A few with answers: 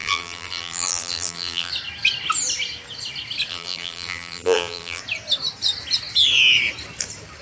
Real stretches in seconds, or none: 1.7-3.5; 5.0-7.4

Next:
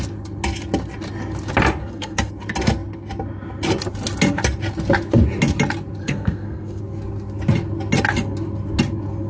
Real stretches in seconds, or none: 0.0-1.8; 2.3-6.0; 6.8-9.3

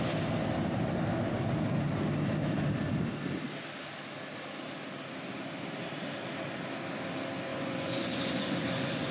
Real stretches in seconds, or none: 0.0-7.5

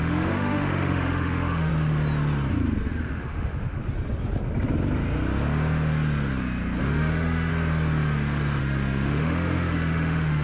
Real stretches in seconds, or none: 1.7-3.0; 3.8-6.8; 7.5-8.6

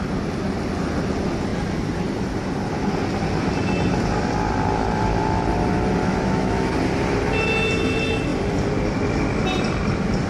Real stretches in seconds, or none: 0.0-6.0; 6.7-10.3

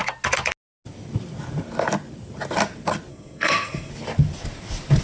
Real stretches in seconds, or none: 0.0-3.1; 3.9-5.0

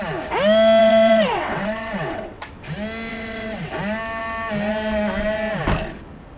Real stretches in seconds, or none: 0.0-0.8; 2.4-3.1; 3.7-6.4